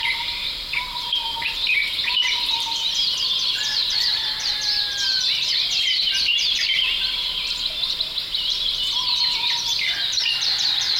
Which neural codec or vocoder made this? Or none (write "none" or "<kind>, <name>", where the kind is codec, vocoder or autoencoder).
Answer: vocoder, BigVGAN v2